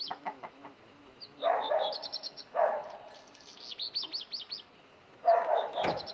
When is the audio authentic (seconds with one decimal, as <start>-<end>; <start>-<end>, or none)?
2.8-4.8